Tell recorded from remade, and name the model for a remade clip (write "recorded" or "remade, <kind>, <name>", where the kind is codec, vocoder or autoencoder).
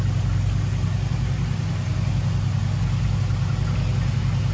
recorded